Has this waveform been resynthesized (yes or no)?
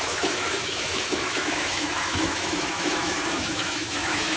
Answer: yes